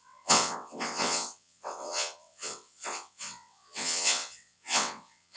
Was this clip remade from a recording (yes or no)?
yes